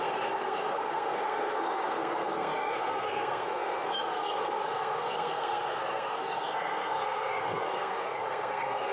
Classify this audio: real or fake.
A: fake